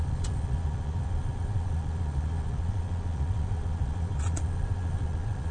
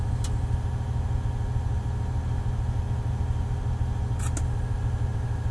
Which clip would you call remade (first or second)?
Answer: first